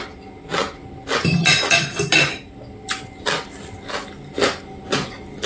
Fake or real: real